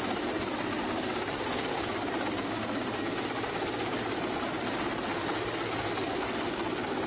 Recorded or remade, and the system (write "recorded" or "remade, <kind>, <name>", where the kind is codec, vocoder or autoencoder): recorded